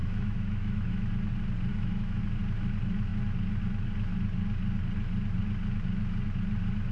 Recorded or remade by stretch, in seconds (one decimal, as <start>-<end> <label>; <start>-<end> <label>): 0.0-1.1 remade; 1.1-1.7 recorded; 1.7-2.2 remade; 2.2-6.9 recorded